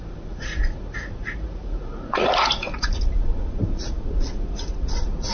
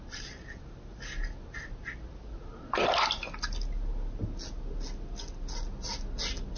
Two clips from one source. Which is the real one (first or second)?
second